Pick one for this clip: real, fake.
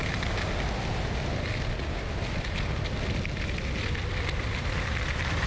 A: real